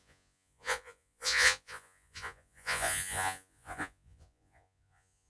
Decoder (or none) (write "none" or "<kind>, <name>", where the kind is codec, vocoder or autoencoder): vocoder, Vocos